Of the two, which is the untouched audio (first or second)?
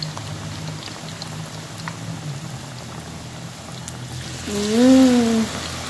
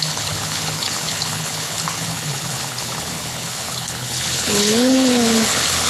first